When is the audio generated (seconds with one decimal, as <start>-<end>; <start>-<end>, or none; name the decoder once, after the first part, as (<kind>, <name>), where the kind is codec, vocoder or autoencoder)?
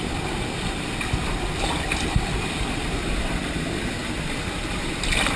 0.0-3.2 (vocoder, BigVGAN v2); 4.0-5.4